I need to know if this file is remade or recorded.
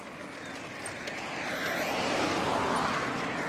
recorded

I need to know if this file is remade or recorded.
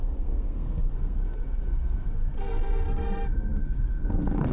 remade